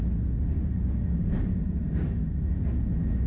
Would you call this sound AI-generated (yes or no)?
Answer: no